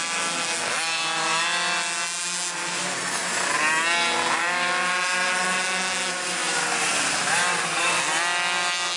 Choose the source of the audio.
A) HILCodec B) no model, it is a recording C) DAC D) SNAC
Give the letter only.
B